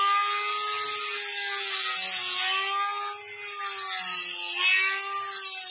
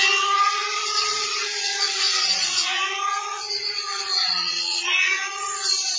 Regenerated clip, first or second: second